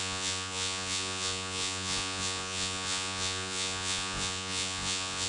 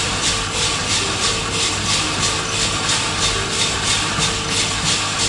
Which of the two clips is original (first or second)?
second